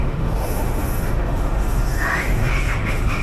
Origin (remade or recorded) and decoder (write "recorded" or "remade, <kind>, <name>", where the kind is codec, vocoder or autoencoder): remade, autoencoder, DAC-VAE